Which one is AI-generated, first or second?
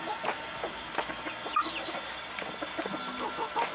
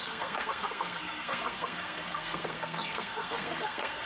second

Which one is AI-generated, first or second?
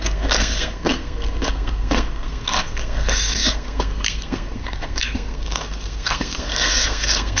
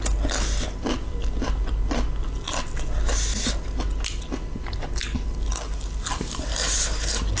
first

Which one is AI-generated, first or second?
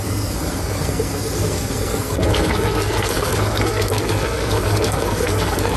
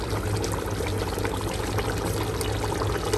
first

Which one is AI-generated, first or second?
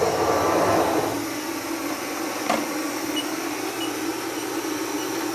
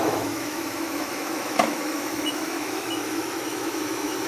second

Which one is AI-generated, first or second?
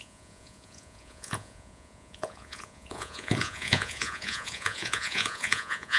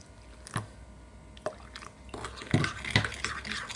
first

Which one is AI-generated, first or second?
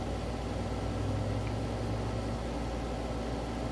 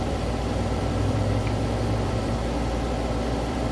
second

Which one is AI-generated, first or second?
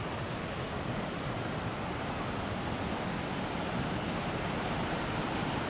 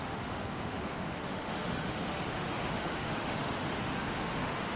second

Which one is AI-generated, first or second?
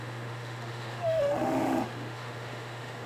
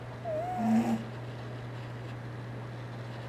first